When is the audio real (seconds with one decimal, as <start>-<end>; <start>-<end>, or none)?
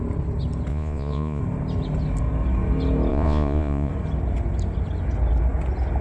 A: 0.0-0.7; 1.4-3.1; 3.9-6.0